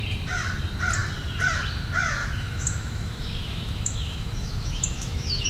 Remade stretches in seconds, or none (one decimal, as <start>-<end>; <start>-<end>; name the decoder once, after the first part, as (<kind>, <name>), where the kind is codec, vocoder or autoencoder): 2.2-5.5 (autoencoder, DAC-VAE)